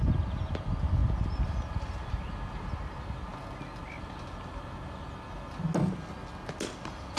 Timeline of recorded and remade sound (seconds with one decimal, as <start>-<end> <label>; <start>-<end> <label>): 0.0-7.2 recorded